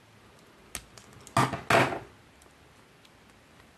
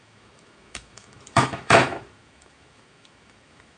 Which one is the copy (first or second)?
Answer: second